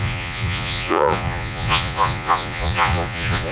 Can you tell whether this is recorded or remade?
remade